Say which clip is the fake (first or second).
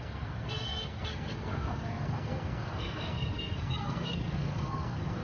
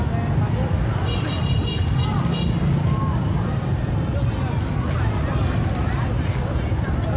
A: first